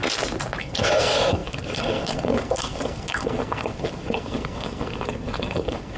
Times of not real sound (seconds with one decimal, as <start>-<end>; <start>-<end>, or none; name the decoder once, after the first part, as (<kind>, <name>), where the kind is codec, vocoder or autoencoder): 0.6-6.0 (codec, SNAC)